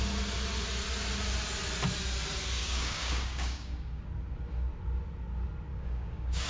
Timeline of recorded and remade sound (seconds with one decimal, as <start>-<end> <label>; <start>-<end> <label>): 0.0-2.6 recorded; 2.6-4.0 remade; 4.0-5.7 recorded; 5.7-6.5 remade